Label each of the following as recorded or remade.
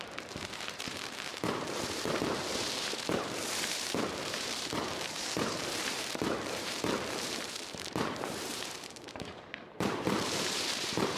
remade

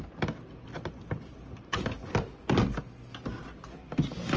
recorded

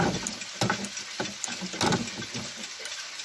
recorded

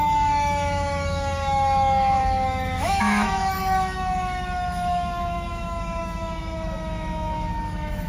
remade